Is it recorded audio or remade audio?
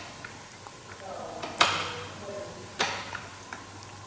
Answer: recorded